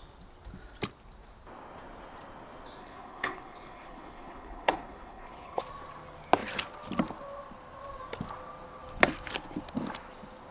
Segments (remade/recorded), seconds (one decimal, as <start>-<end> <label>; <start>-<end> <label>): 0.0-2.8 recorded; 2.8-5.6 remade; 5.6-10.5 recorded